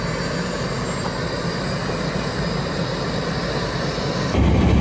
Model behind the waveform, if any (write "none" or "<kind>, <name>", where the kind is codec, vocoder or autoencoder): none